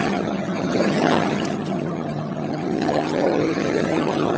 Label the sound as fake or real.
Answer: fake